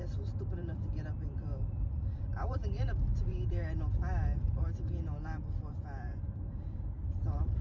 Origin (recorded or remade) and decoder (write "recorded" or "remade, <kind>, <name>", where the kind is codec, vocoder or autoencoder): remade, vocoder, BigVGAN v2